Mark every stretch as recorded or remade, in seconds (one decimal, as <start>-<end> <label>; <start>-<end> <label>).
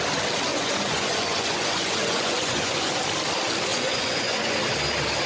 0.0-0.5 recorded; 0.5-3.0 remade; 3.0-3.7 recorded; 3.7-4.6 remade; 4.6-5.3 recorded